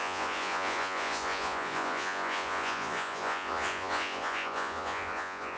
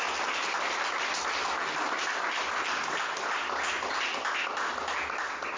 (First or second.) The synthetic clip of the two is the first